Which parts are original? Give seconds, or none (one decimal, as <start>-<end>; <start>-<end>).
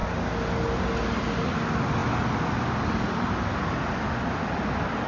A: 0.0-5.1